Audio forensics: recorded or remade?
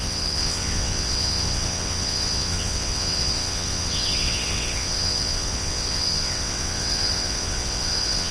remade